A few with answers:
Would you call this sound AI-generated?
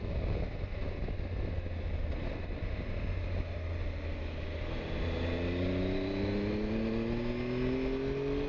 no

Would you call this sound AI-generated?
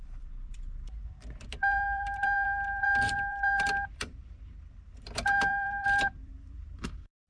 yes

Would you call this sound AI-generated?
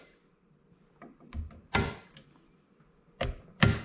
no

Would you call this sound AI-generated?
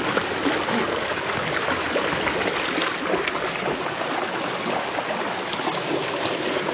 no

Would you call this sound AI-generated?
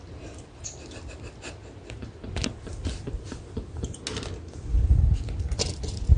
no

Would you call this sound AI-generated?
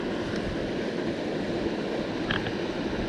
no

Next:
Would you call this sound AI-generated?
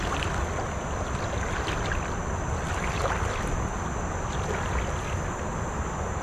no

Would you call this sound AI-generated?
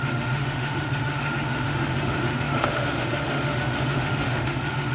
yes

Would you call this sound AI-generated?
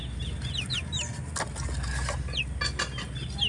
no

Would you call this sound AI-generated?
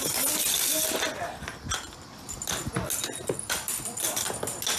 no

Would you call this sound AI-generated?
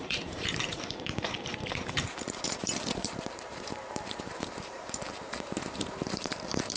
yes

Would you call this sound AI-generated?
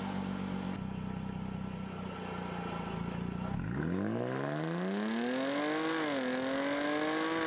no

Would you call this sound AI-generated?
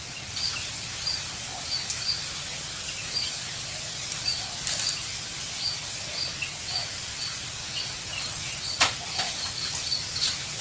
no